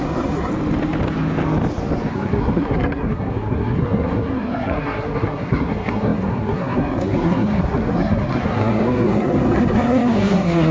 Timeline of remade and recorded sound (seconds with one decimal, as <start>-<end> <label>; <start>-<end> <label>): 0.0-0.5 remade; 0.5-2.1 recorded; 2.1-10.7 remade